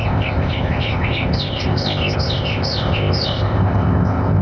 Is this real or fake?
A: fake